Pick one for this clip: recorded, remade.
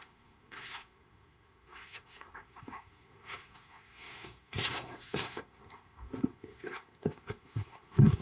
remade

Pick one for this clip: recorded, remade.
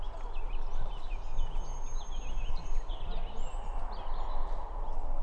recorded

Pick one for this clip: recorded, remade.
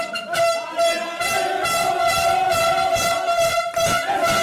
recorded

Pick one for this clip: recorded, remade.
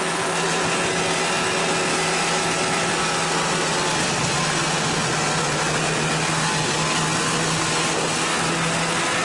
recorded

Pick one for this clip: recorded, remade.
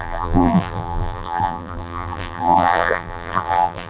remade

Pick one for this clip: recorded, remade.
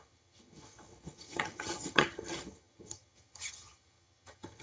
remade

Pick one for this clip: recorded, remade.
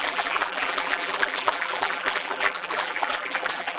remade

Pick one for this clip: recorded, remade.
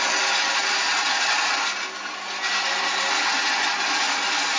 recorded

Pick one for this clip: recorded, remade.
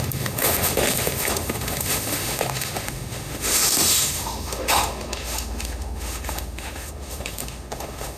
remade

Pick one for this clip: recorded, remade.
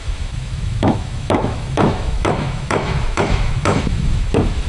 remade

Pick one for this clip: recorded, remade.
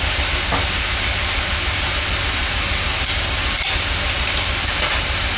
recorded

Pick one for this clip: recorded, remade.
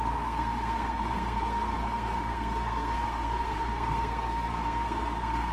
remade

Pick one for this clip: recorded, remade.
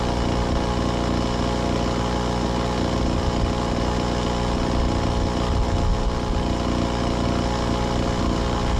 recorded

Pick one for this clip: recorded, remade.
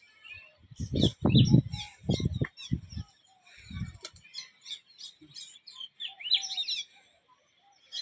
recorded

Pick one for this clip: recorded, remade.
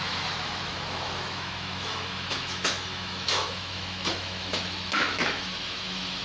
remade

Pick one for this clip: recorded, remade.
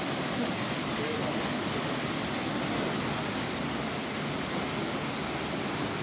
recorded